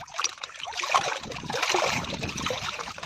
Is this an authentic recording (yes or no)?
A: no